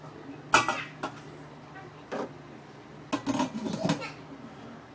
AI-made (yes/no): no